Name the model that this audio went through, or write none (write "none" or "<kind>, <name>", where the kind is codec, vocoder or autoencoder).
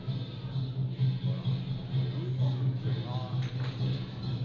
none